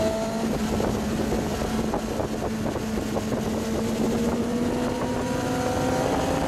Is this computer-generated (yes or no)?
no